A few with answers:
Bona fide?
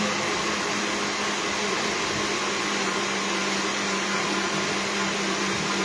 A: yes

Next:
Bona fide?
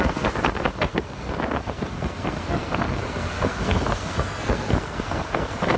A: no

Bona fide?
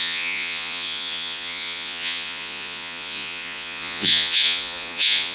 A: no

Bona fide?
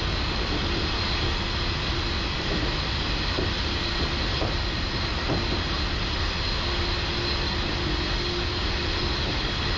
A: yes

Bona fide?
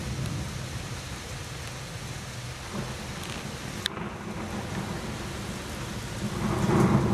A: yes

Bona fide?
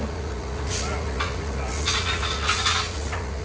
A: no